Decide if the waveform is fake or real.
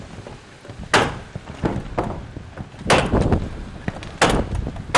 real